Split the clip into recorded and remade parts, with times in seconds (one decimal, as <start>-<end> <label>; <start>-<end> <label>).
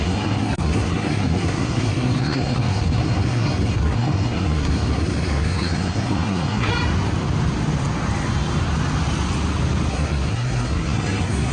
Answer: 0.0-6.7 remade; 6.7-9.9 recorded; 9.9-11.5 remade